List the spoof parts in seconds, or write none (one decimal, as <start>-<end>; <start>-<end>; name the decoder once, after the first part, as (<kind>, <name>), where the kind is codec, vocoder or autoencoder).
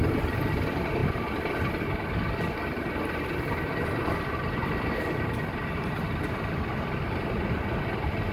0.0-8.3 (vocoder, BigVGAN v2)